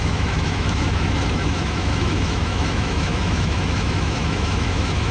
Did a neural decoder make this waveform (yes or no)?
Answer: yes